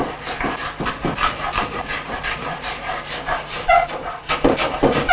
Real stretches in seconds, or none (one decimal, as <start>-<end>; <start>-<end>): 0.0-3.8; 4.3-5.1